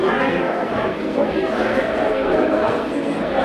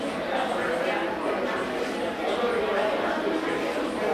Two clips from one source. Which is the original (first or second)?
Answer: second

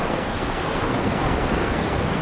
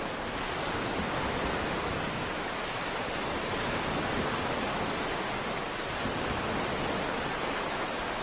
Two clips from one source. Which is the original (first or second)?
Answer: second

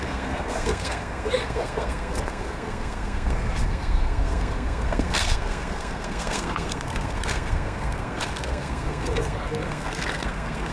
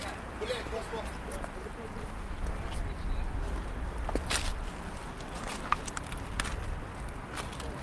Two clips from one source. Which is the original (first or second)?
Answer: second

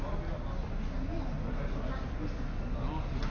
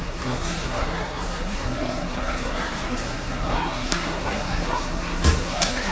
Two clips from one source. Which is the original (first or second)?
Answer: first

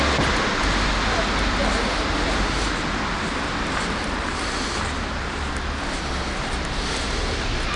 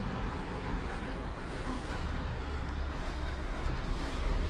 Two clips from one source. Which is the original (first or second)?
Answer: first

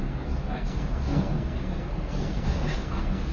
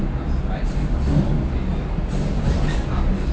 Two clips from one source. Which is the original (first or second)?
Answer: second